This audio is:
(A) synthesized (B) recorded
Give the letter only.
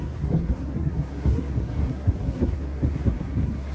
A